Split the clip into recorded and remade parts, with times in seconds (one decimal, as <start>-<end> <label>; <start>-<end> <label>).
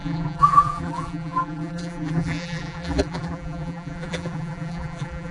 0.0-5.3 remade